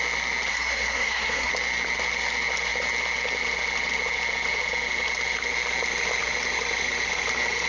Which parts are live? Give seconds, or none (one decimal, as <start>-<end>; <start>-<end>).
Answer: 0.0-0.5; 1.5-7.7